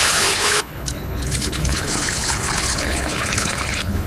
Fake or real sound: fake